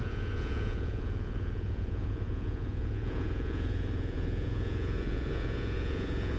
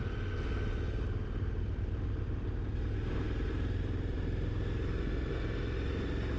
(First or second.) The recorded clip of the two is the second